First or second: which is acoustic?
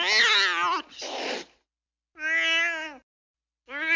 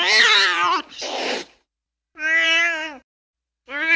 first